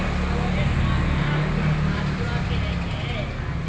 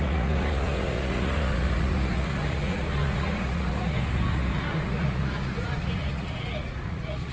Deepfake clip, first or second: second